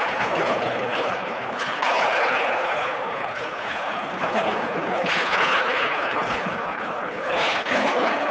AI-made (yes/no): yes